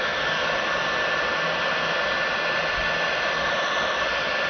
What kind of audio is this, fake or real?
real